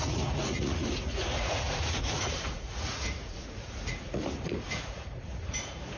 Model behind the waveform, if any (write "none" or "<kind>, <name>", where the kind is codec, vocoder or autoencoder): vocoder, Vocos